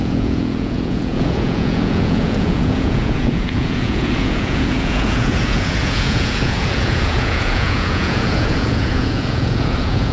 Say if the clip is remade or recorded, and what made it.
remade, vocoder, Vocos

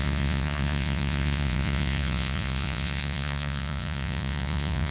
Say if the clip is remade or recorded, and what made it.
remade, vocoder, Vocos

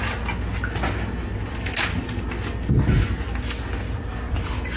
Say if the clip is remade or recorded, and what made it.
recorded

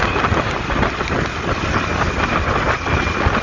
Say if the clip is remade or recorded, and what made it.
recorded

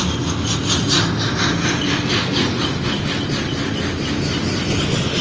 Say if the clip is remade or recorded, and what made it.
recorded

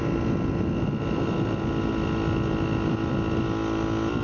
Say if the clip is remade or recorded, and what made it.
recorded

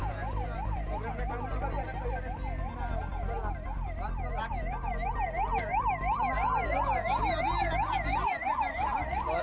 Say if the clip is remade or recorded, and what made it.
recorded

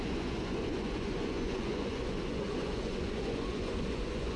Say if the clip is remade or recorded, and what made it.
remade, vocoder, Vocos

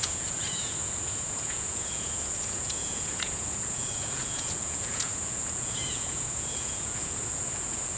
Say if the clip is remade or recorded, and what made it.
remade, vocoder, Vocos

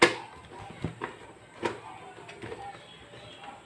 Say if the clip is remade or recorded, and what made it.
recorded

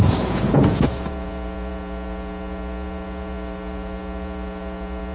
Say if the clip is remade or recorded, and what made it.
remade, vocoder, Vocos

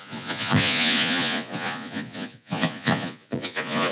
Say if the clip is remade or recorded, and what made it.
remade, vocoder, Vocos